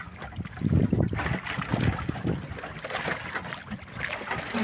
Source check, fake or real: real